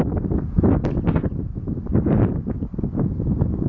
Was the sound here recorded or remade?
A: recorded